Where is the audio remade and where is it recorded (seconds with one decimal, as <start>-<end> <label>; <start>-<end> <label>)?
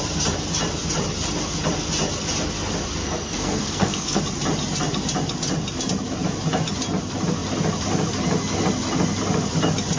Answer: 0.0-3.0 recorded; 3.0-4.2 remade; 4.2-10.0 recorded